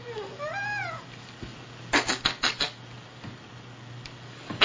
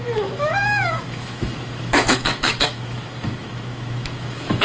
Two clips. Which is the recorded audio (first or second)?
first